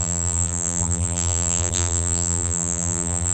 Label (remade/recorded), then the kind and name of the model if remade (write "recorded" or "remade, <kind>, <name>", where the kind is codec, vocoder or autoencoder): remade, vocoder, BigVGAN v2